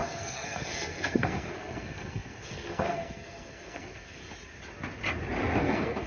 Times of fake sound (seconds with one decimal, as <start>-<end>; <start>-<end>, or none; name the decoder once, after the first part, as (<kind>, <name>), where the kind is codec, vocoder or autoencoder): 0.0-4.2 (codec, SNAC); 5.6-6.1

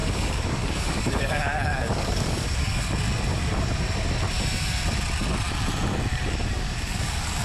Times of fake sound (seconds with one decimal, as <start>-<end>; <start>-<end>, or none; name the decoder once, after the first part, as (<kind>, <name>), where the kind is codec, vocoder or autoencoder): 0.0-2.8 (codec, DAC); 6.1-7.4